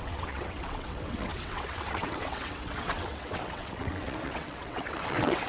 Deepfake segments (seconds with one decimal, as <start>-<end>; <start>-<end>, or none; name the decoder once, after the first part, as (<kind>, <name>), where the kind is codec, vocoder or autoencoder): 0.0-5.5 (vocoder, WaveNeXt)